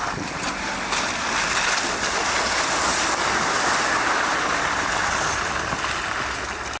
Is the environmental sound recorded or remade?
recorded